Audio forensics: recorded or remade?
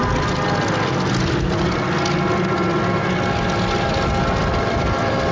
recorded